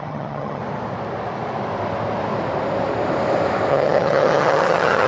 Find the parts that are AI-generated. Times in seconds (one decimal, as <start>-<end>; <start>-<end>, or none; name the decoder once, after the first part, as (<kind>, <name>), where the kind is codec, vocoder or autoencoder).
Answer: 0.0-0.6 (vocoder, HiFi-GAN); 3.7-5.1